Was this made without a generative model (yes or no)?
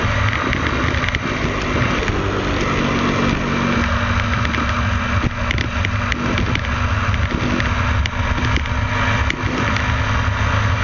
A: yes